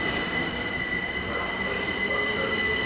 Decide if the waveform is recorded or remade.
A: recorded